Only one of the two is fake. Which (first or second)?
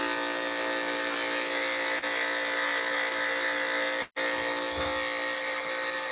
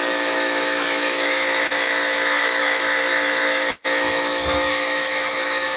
second